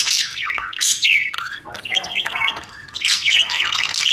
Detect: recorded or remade remade